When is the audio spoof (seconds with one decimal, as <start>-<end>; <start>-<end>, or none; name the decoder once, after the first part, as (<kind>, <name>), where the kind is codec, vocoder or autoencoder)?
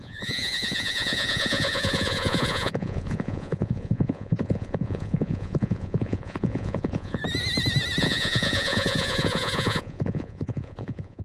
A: 0.0-7.2 (vocoder, Vocos); 8.0-11.2